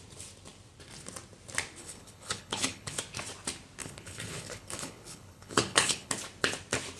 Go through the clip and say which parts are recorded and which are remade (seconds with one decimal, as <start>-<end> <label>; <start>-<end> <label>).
0.0-1.8 recorded; 1.8-3.0 remade; 3.0-3.8 recorded; 3.8-6.1 remade; 6.1-7.0 recorded

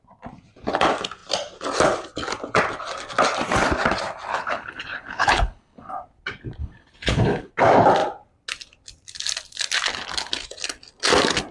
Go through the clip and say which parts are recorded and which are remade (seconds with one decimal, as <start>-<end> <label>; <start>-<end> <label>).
0.0-4.3 recorded; 4.3-5.9 remade; 5.9-6.6 recorded; 6.6-7.5 remade; 7.5-11.5 recorded

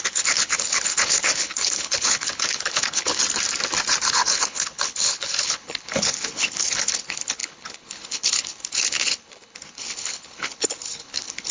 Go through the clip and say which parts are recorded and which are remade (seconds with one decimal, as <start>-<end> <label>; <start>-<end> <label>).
0.0-3.2 remade; 3.2-4.0 recorded; 4.0-11.5 remade

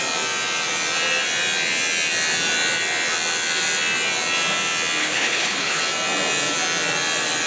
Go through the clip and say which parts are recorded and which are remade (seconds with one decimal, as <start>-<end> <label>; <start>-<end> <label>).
0.0-5.0 recorded; 5.0-5.8 remade; 5.8-7.5 recorded

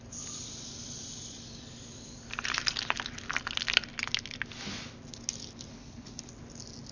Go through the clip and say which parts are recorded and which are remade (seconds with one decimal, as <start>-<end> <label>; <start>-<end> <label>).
0.0-5.7 recorded; 5.7-6.3 remade; 6.3-6.9 recorded

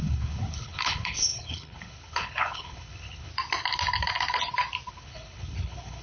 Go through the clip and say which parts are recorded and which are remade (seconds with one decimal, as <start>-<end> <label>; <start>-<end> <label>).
0.0-3.3 remade; 3.3-4.9 recorded; 4.9-6.0 remade

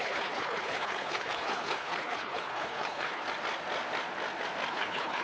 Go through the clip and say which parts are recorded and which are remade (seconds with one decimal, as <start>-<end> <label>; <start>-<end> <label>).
0.0-3.2 remade; 3.2-4.7 recorded; 4.7-5.2 remade

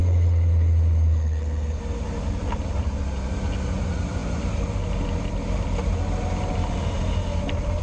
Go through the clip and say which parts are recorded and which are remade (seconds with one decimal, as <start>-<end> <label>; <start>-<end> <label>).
0.0-1.8 remade; 1.8-7.8 recorded